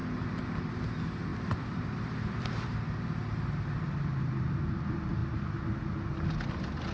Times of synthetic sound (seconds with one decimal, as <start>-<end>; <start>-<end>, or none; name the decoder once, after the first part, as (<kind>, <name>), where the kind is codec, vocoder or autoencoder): 1.3-4.7 (vocoder, BigVGAN v2)